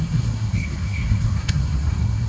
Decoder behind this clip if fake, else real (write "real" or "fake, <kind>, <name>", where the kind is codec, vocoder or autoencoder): fake, codec, SNAC